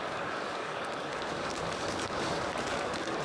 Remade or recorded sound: remade